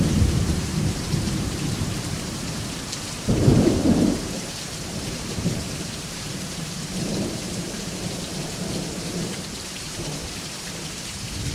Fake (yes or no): yes